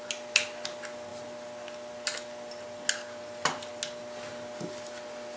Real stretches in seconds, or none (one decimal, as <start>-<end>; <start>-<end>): 0.0-5.4